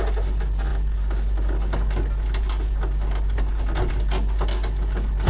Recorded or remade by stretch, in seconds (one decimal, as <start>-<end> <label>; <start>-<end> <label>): 0.0-5.3 recorded